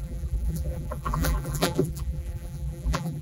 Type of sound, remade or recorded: remade